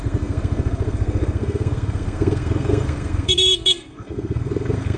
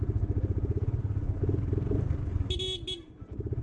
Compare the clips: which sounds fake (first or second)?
first